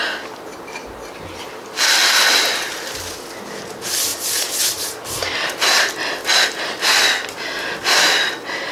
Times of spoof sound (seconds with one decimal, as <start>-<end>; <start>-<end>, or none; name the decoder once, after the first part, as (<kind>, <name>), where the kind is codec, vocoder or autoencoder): none